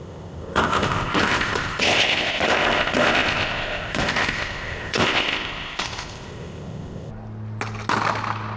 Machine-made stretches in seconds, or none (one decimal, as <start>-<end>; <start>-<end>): 0.0-7.1